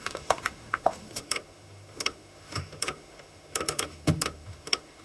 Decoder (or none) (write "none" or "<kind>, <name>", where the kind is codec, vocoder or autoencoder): autoencoder, DAC-VAE